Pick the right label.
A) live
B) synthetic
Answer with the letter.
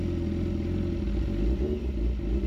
A